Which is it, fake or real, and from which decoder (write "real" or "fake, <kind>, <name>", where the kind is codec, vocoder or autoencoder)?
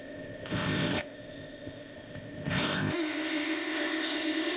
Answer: fake, codec, ZipCodec